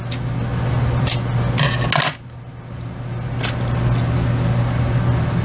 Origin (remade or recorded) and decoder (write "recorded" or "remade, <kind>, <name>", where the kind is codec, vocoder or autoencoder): recorded